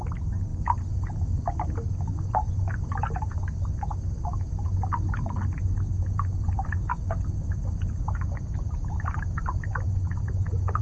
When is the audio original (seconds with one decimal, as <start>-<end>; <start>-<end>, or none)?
0.0-10.8